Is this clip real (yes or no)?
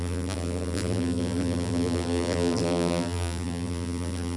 no